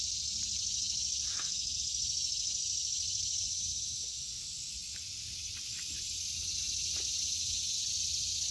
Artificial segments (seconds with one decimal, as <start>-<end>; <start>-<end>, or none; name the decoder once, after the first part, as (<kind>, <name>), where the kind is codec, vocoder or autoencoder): 1.3-1.8 (autoencoder, DAC-VAE)